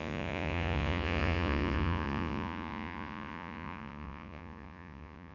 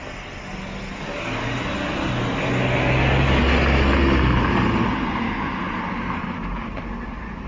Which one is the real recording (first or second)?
second